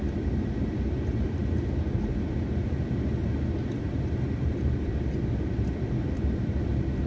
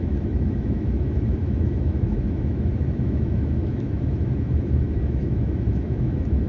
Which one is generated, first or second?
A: second